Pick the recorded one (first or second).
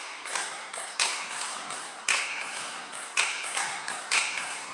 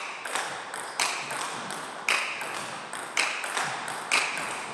second